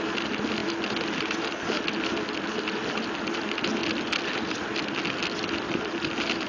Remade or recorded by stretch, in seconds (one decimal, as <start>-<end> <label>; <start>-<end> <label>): 0.0-6.5 recorded

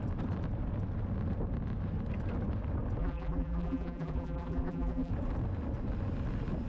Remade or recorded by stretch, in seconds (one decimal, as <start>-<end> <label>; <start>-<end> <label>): 0.0-3.0 recorded; 3.0-5.1 remade; 5.1-6.7 recorded

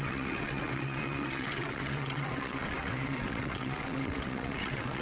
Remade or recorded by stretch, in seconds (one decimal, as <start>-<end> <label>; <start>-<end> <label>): 0.0-5.0 remade

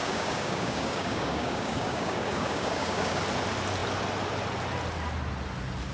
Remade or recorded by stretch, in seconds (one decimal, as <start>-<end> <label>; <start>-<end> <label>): 0.0-3.2 remade; 3.2-5.9 recorded